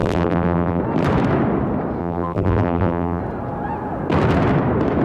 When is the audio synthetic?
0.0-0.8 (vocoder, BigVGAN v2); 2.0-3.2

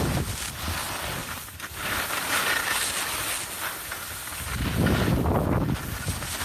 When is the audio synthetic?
1.2-2.5 (vocoder, BigVGAN v2)

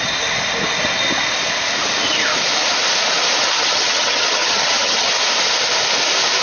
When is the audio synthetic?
3.4-5.1 (vocoder, HiFi-GAN)

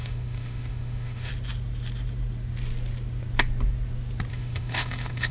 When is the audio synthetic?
0.0-1.3 (autoencoder, DAC-VAE); 4.3-5.3

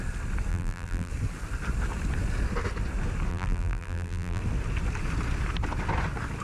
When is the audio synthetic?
0.5-1.1 (vocoder, BigVGAN v2); 3.3-4.4

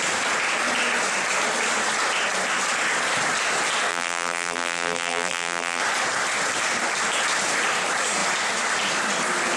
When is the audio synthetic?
3.9-5.8 (vocoder, BigVGAN v2)

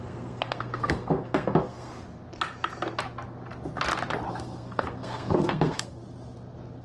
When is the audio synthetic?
0.0-1.9 (codec, SNAC); 4.3-6.0

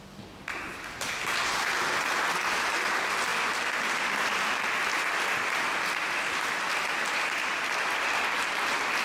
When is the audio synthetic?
none